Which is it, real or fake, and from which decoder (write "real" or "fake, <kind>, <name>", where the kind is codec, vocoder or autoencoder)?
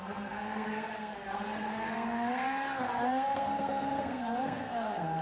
fake, codec, SNAC